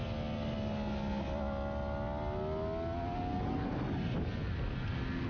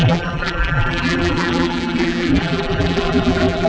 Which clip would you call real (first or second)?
first